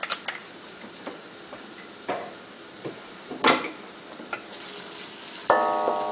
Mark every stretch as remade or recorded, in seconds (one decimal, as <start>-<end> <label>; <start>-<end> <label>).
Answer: 0.0-0.4 recorded; 0.4-2.2 remade; 2.2-6.1 recorded